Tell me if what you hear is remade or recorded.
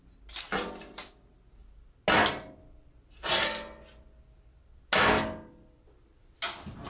recorded